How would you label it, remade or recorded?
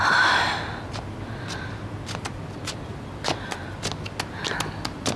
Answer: recorded